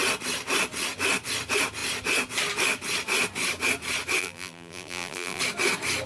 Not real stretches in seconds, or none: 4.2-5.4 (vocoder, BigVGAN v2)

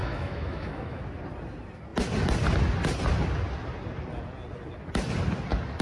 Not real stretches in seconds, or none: 0.0-1.0 (autoencoder, DAC-VAE)